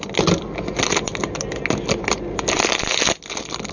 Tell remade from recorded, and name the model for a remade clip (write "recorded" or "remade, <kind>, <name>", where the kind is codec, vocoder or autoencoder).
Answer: recorded